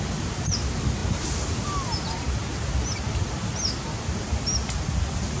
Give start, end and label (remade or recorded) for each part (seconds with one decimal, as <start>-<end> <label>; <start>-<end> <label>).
0.0-5.4 recorded

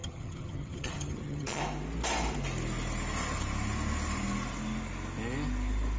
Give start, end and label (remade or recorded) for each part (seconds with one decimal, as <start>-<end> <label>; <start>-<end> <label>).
0.0-1.6 remade; 1.6-6.0 recorded

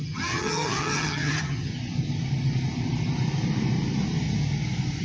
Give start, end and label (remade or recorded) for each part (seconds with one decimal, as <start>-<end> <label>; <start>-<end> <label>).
0.0-1.7 remade; 1.7-5.0 recorded

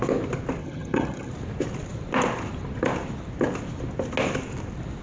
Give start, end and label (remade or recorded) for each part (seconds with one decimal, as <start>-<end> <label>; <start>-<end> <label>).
0.0-0.6 recorded; 0.6-1.3 remade; 1.3-5.0 recorded

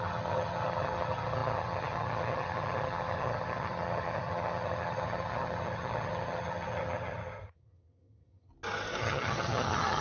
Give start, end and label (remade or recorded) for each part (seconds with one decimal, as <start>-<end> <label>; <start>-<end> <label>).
0.0-8.5 remade; 8.5-9.0 recorded; 9.0-10.0 remade

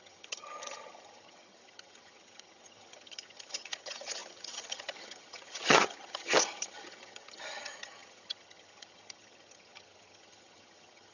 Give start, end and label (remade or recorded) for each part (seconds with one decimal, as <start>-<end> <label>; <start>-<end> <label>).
0.0-11.1 remade